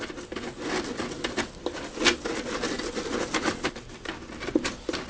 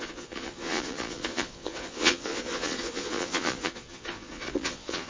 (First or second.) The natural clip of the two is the first